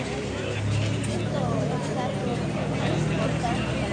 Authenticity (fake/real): real